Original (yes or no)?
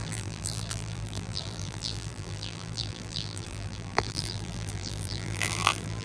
no